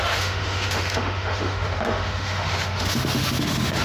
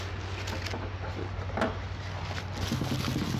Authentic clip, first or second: second